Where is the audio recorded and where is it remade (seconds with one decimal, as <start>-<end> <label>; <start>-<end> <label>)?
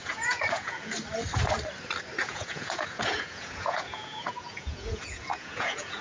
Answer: 0.0-0.9 remade; 0.9-2.2 recorded; 2.2-6.0 remade